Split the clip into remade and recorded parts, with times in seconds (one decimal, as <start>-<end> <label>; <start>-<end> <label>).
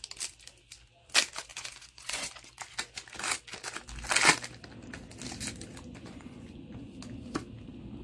0.0-1.5 recorded; 1.5-2.3 remade; 2.3-6.0 recorded; 6.0-7.0 remade; 7.0-8.0 recorded